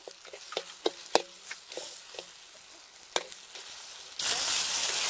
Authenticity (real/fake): real